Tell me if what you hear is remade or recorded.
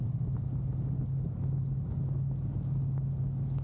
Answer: recorded